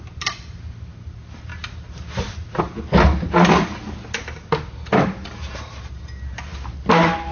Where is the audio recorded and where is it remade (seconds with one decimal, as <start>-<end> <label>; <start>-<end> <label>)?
0.0-7.3 recorded